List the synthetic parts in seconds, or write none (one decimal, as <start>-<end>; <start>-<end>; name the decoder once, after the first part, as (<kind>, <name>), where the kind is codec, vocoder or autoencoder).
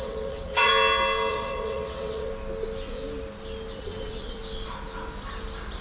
0.0-0.7 (vocoder, WaveNeXt); 1.3-2.3; 3.8-4.4